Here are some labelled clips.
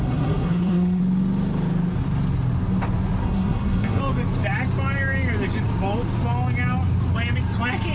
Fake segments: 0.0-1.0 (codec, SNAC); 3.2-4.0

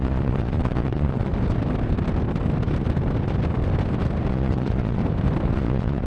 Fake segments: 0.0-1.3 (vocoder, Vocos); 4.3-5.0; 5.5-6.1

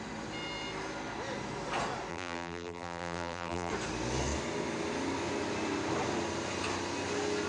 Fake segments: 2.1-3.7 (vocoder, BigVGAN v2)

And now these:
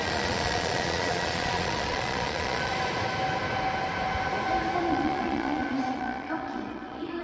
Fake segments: 0.0-2.7 (vocoder, Vocos); 4.9-7.2